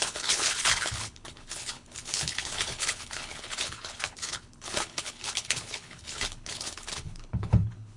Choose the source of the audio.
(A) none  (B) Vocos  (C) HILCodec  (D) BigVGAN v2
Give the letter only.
C